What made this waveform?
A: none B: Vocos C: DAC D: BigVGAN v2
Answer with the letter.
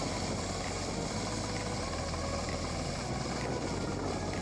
A